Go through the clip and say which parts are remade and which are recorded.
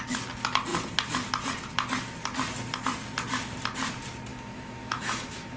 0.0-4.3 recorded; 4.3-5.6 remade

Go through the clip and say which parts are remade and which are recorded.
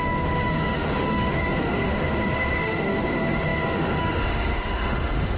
0.0-5.4 remade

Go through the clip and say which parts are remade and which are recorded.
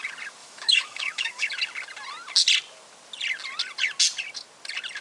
0.0-0.4 recorded; 0.4-1.5 remade; 1.5-5.0 recorded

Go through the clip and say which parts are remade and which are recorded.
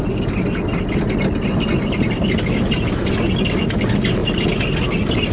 0.0-5.3 recorded